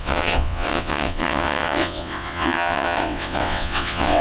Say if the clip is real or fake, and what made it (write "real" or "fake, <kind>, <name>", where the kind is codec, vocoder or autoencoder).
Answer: fake, vocoder, WaveNeXt